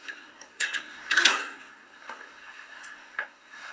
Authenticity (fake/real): fake